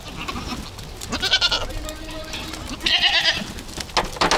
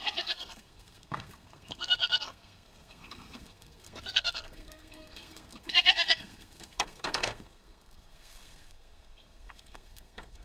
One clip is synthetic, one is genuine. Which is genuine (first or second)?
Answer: first